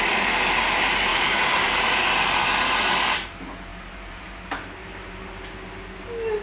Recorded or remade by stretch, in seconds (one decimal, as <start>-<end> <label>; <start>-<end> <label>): 0.0-1.1 recorded; 1.1-2.1 remade; 2.1-3.7 recorded; 3.7-5.2 remade; 5.2-6.4 recorded